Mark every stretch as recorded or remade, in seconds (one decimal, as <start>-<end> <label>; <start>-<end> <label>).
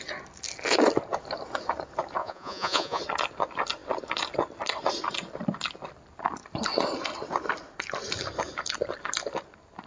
0.0-2.2 recorded; 2.2-3.0 remade; 3.0-9.9 recorded